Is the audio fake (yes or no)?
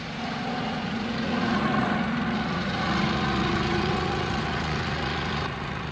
yes